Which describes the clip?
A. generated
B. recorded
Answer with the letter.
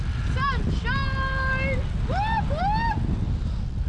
B